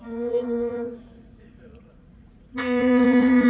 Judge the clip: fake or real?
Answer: fake